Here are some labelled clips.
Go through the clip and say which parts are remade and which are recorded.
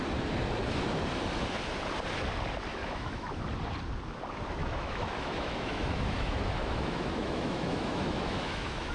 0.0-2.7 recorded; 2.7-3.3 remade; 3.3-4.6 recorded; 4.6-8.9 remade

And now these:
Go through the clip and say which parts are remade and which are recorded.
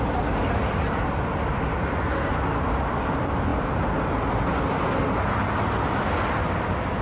0.0-7.0 recorded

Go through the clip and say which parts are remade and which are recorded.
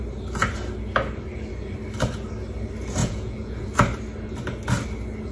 0.0-3.0 recorded; 3.0-3.6 remade; 3.6-5.3 recorded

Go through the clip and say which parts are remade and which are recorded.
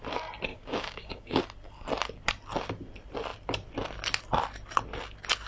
0.0-0.5 recorded; 0.5-1.4 remade; 1.4-5.5 recorded